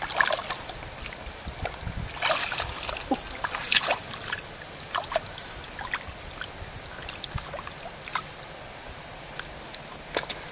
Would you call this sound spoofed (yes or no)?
no